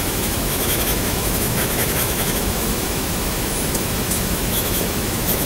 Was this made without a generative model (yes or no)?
no